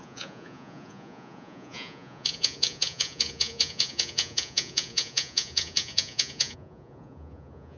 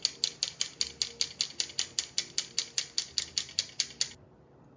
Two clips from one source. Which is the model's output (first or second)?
first